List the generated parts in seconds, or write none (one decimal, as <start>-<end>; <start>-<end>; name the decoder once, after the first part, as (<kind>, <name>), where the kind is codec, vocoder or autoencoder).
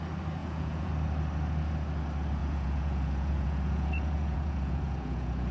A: 0.4-0.9 (vocoder, Vocos); 2.4-5.5